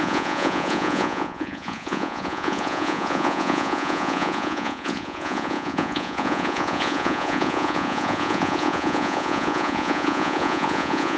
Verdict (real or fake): fake